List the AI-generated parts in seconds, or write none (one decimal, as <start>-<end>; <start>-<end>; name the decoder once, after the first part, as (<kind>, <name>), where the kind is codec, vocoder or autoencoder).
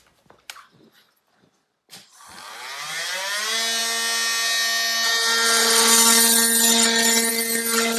none